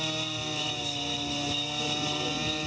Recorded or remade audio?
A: recorded